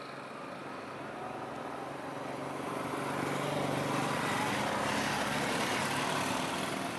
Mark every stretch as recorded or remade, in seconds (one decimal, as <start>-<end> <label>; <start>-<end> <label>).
0.0-7.0 recorded